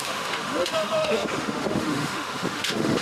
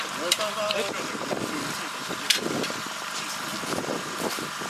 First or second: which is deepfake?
first